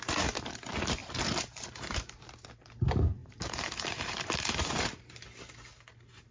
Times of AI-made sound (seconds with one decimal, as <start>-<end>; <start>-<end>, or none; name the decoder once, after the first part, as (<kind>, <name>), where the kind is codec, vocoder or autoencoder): 1.0-2.2 (vocoder, BigVGAN v2); 3.2-5.2